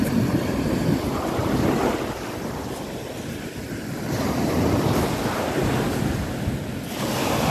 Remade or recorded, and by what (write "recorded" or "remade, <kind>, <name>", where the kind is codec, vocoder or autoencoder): recorded